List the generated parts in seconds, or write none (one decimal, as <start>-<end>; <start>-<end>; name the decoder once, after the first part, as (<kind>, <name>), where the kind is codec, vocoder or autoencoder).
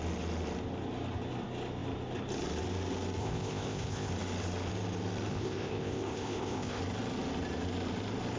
3.2-4.1 (codec, ZipCodec); 5.3-6.8